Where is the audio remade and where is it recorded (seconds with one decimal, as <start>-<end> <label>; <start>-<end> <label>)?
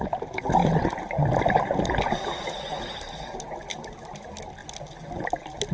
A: 0.0-5.7 recorded